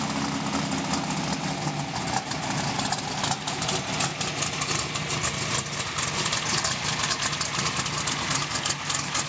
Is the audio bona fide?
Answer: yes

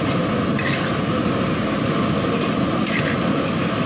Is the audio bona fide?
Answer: yes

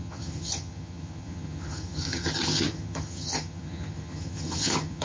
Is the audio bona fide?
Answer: no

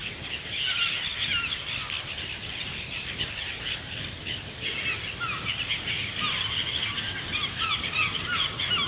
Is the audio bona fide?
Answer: yes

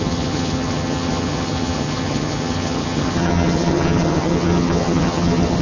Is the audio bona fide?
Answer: no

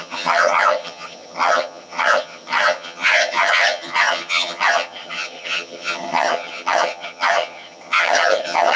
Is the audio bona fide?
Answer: no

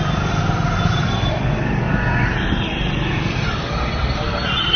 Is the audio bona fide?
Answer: yes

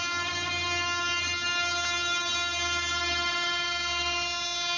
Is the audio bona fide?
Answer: yes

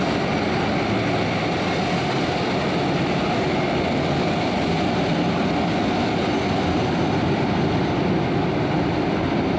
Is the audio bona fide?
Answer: yes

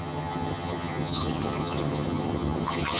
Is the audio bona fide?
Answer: no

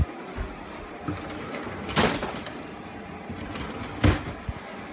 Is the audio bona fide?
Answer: yes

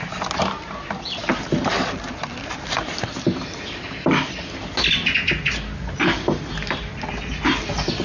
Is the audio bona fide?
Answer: yes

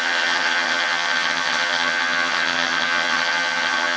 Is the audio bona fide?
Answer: no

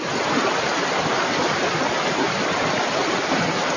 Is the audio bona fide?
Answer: yes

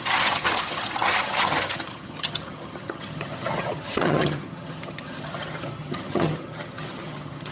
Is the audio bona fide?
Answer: no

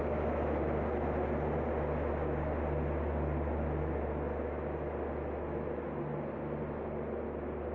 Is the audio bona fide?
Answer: yes